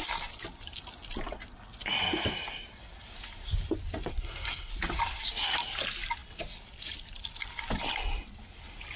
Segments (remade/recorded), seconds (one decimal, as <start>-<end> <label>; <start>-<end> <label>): 0.0-4.1 recorded; 4.1-4.7 remade; 4.7-9.0 recorded